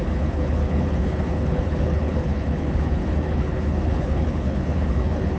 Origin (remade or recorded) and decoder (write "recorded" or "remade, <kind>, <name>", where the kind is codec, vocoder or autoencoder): remade, codec, HILCodec